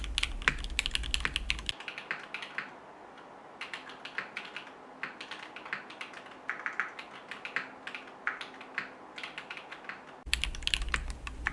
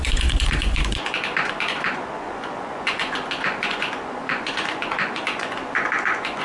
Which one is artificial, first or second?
second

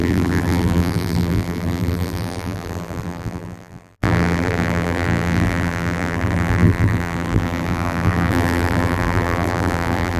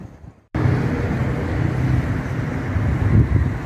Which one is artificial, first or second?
first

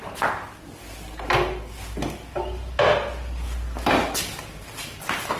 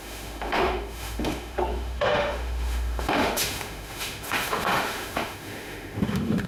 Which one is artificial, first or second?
second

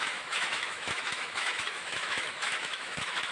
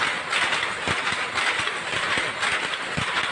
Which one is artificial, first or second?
first